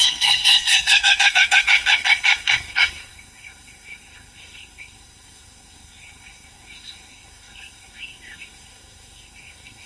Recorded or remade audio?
remade